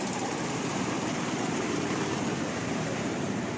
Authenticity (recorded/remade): remade